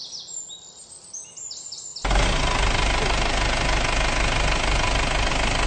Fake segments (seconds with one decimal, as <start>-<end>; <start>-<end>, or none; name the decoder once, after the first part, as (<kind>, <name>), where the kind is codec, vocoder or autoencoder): none